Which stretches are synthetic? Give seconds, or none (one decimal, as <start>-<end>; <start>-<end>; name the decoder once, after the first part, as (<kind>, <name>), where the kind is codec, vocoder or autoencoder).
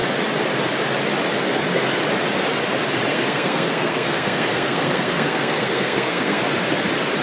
3.1-6.5 (codec, SNAC)